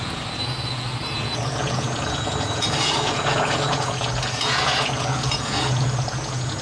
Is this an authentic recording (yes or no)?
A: no